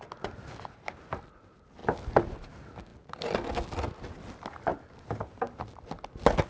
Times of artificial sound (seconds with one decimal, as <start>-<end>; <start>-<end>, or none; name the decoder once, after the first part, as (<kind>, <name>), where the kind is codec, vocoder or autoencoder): none